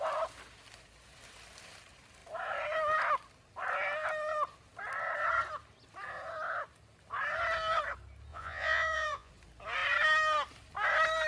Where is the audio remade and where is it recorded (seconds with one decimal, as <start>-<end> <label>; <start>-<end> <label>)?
0.0-8.3 recorded; 8.3-9.3 remade; 9.3-11.3 recorded